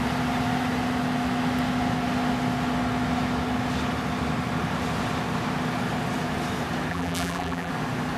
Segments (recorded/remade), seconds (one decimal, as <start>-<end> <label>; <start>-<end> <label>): 0.0-6.9 recorded; 6.9-7.7 remade; 7.7-8.2 recorded